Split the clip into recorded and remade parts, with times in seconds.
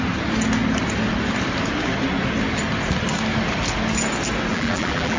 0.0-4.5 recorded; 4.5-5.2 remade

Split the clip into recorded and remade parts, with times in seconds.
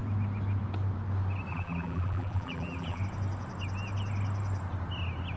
0.0-1.5 recorded; 1.5-3.0 remade; 3.0-5.4 recorded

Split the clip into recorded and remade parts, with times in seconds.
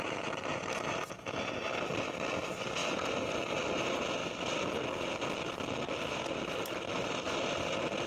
0.0-8.1 recorded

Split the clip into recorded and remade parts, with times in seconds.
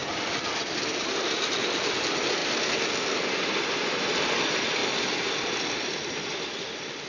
0.0-2.0 remade; 2.0-4.8 recorded; 4.8-5.3 remade; 5.3-7.1 recorded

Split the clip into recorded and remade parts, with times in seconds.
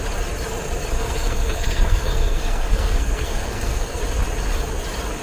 0.0-0.9 recorded; 0.9-4.0 remade; 4.0-5.2 recorded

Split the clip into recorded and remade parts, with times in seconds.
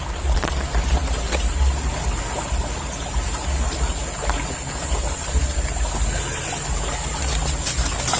0.0-8.2 recorded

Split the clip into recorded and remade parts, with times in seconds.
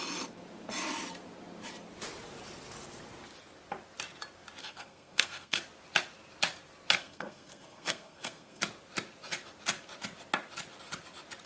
0.0-4.6 recorded; 4.6-5.6 remade; 5.6-7.0 recorded; 7.0-8.6 remade; 8.6-11.5 recorded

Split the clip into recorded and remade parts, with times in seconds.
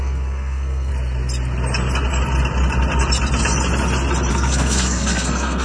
0.0-0.9 remade; 0.9-4.3 recorded; 4.3-5.6 remade